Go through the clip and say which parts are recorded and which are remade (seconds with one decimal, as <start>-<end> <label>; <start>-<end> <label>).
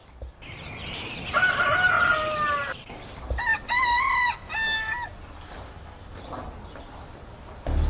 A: 0.0-7.9 recorded